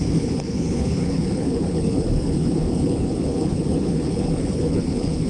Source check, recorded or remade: remade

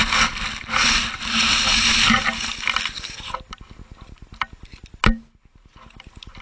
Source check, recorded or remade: recorded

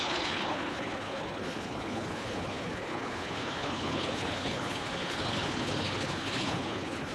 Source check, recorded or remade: remade